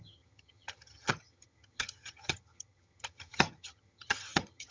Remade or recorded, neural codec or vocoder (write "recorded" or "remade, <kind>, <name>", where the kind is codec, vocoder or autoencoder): remade, vocoder, HiFi-GAN